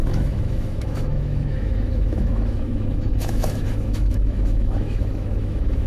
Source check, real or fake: fake